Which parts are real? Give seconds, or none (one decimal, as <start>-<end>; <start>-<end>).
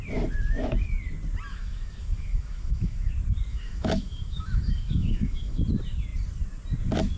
0.0-1.5; 3.1-3.5; 5.6-7.2